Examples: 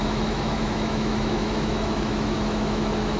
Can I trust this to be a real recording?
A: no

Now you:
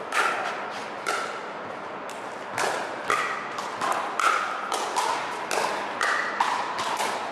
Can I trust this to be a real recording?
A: yes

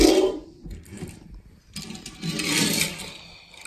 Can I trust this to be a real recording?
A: yes